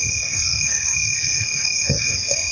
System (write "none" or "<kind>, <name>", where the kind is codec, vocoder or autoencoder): codec, SNAC